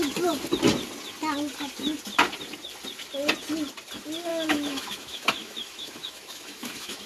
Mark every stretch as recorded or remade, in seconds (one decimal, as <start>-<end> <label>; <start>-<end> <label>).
0.0-4.3 recorded; 4.3-7.1 remade